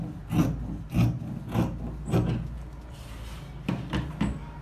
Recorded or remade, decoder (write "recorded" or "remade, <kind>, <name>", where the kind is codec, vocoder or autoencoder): recorded